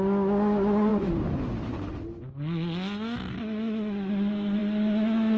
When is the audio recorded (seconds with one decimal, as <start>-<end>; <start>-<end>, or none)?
0.0-5.4